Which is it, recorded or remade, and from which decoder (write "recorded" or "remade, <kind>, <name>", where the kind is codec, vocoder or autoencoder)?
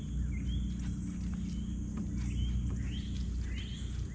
recorded